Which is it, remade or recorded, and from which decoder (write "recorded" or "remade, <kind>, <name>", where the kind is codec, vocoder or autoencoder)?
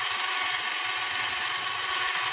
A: recorded